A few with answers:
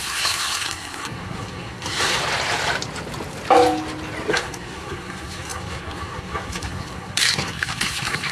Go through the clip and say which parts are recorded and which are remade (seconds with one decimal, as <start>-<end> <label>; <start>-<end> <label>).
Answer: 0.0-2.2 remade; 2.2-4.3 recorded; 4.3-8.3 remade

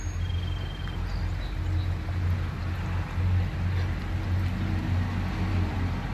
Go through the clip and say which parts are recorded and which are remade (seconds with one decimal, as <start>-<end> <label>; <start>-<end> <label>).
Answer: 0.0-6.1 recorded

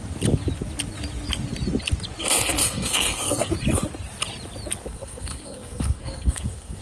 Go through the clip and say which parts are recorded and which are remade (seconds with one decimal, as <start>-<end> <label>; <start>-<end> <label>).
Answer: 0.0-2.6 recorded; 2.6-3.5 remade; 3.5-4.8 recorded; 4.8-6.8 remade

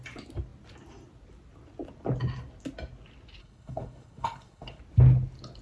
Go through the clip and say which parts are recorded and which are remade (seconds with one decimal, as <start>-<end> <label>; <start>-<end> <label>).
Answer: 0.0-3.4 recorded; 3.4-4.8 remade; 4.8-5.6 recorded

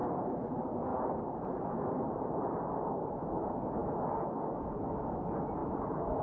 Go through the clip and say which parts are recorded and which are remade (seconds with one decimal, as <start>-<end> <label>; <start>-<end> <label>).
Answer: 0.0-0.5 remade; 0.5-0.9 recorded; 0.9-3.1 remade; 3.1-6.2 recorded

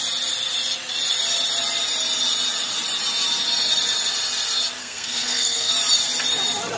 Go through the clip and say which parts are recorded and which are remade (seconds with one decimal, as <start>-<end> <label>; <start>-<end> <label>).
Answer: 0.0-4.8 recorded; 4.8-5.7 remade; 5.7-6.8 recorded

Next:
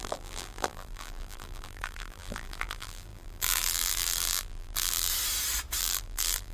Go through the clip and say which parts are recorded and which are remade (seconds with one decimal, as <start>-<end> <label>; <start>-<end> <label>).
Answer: 0.0-5.1 remade; 5.1-5.8 recorded; 5.8-6.5 remade

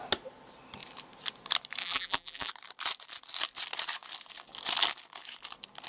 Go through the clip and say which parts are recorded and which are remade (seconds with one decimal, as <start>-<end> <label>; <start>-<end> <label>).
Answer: 0.0-1.8 recorded; 1.8-2.5 remade; 2.5-5.9 recorded